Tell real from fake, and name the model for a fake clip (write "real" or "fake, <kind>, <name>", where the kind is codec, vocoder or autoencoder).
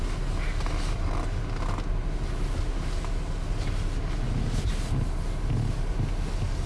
real